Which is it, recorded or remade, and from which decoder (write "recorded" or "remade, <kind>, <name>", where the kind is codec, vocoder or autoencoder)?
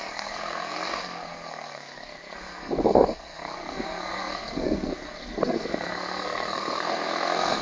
remade, codec, SNAC